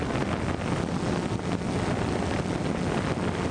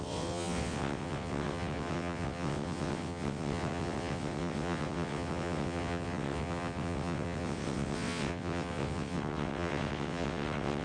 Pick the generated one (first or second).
second